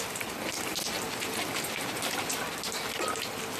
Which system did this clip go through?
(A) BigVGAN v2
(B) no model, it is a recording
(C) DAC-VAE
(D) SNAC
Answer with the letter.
B